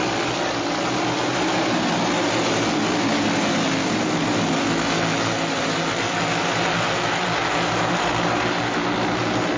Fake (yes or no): no